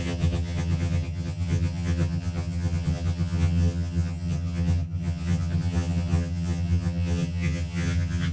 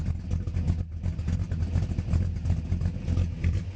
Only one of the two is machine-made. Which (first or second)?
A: first